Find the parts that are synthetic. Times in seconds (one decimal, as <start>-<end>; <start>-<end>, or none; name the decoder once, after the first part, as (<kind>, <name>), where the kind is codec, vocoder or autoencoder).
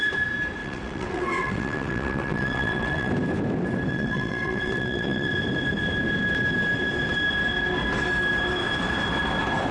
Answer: 0.6-3.1 (vocoder, WaveNeXt); 3.9-5.3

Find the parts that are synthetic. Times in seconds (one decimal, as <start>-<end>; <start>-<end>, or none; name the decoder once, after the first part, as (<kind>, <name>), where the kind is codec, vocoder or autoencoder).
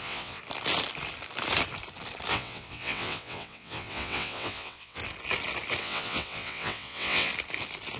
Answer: 0.0-0.4 (vocoder, WaveNeXt); 2.3-5.0; 5.8-7.3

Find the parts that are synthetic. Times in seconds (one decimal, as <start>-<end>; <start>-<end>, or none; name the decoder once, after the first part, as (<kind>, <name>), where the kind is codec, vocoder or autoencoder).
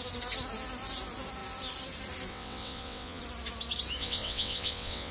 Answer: 2.3-3.2 (vocoder, WaveNeXt); 4.0-5.1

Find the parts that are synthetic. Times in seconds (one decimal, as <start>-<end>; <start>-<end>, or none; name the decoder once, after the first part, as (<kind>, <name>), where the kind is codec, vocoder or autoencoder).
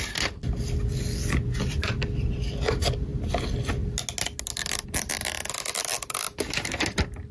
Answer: none